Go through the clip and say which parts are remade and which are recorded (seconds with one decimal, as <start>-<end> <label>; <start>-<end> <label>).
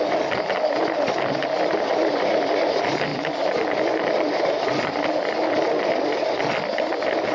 0.0-3.1 recorded; 3.1-6.3 remade; 6.3-7.3 recorded